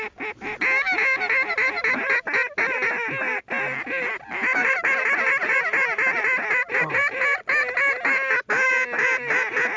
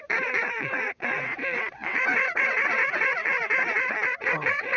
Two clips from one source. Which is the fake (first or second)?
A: second